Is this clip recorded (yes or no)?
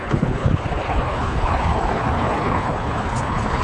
no